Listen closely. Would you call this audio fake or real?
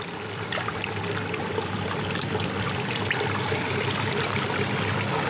real